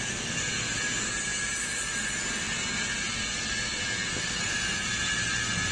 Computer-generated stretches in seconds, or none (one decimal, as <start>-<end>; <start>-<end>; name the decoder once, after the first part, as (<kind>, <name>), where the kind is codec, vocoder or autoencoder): none